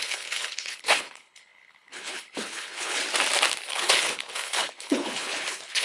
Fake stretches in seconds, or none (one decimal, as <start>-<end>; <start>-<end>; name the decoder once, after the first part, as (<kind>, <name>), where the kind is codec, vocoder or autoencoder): 0.0-3.0 (codec, HILCodec); 3.7-5.8